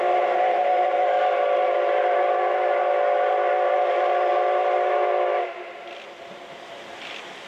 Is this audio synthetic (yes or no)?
no